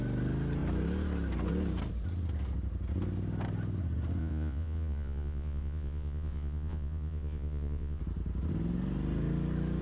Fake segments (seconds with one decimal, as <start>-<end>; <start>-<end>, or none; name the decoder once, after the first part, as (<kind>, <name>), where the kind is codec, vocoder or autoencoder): 4.2-8.0 (vocoder, Vocos)